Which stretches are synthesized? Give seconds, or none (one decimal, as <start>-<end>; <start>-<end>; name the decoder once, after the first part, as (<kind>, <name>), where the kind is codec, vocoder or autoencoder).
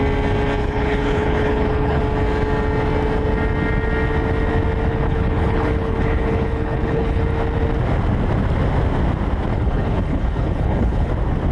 0.6-2.0 (codec, HILCodec); 4.9-7.2; 9.5-11.1